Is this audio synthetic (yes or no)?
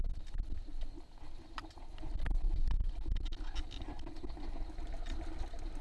no